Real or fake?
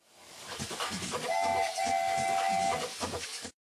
fake